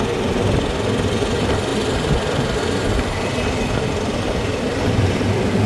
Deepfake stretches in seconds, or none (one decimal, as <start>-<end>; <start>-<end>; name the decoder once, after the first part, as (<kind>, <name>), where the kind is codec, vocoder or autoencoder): none